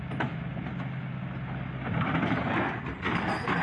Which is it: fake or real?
real